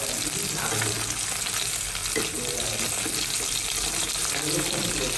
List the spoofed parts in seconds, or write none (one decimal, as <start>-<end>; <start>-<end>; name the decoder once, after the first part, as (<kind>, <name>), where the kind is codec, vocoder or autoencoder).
none